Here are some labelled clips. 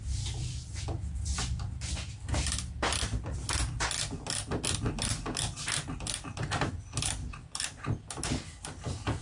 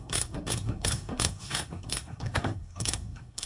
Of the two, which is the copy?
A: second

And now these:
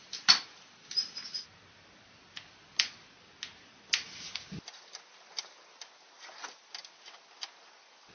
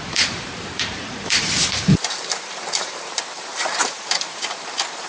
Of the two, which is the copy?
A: second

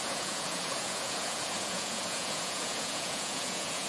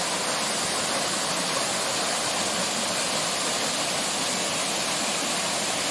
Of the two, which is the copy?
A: first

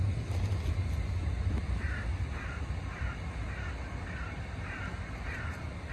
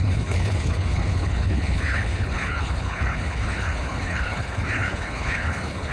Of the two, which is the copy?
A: second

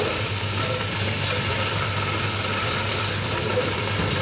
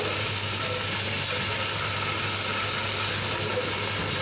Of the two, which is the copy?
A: first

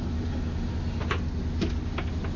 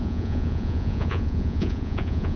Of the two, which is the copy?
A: second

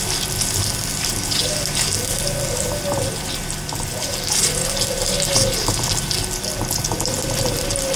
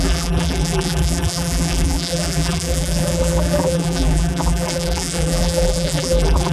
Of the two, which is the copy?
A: second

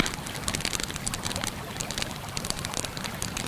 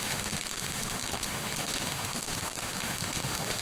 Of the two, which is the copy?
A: second